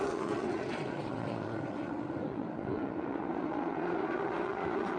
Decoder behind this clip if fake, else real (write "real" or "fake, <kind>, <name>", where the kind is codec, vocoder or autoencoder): fake, vocoder, Vocos